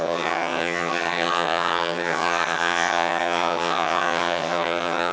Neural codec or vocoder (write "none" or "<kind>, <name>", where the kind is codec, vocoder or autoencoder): vocoder, HiFi-GAN